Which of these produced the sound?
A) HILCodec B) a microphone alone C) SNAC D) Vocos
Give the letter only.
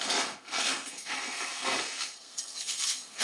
C